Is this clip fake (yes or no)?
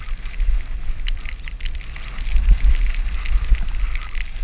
no